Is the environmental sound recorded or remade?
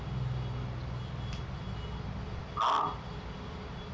recorded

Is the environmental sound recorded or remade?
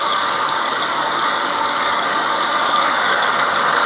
remade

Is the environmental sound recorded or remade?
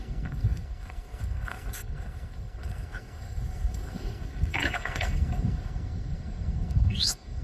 remade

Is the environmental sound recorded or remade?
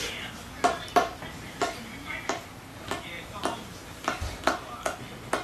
recorded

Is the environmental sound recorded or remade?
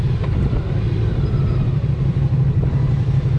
remade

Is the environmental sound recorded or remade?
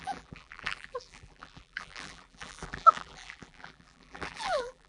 remade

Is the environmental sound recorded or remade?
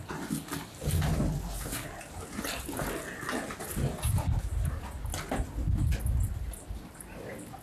recorded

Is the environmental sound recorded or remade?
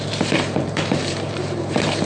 remade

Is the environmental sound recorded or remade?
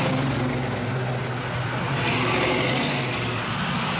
recorded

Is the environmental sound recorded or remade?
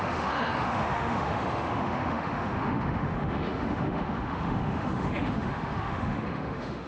remade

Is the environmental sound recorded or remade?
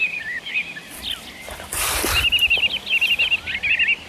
recorded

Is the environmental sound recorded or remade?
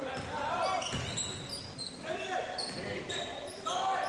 recorded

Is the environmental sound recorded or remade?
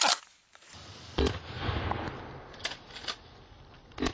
recorded